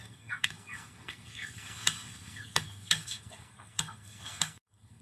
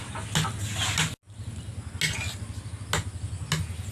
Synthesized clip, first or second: first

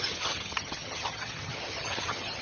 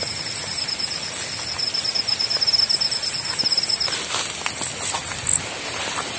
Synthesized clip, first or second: first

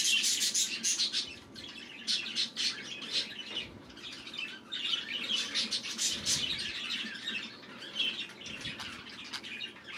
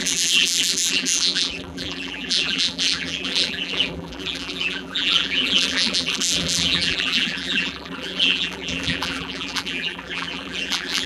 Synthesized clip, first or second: second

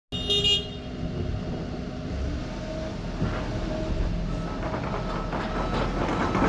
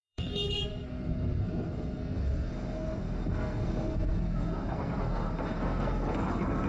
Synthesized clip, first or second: second